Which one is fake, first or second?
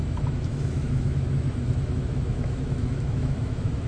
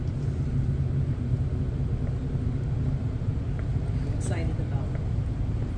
first